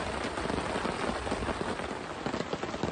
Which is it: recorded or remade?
recorded